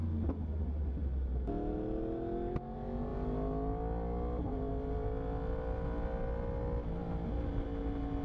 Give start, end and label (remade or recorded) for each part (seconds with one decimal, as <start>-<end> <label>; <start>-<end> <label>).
0.0-8.2 recorded